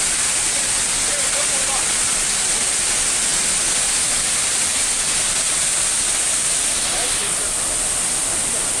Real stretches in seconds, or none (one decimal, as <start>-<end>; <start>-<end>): 0.0-8.8